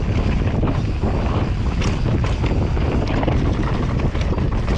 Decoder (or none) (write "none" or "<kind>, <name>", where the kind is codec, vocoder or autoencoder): none